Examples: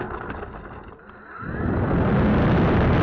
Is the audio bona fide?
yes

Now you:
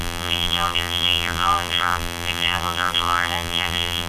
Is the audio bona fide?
no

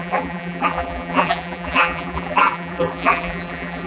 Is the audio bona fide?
no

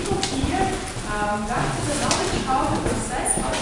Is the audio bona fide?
yes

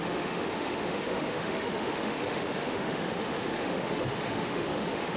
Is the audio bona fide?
no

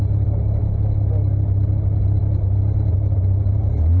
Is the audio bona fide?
yes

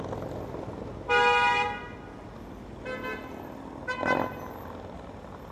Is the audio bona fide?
yes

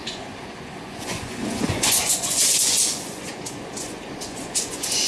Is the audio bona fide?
no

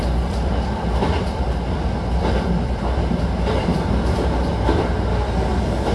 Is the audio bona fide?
no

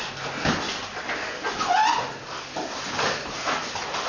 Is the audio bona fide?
yes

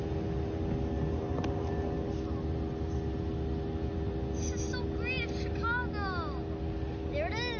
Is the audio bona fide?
yes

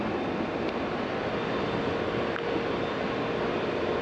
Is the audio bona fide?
yes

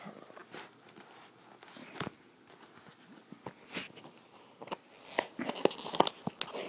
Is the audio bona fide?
yes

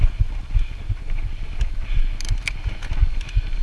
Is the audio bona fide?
yes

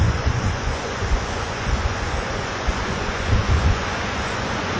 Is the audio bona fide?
no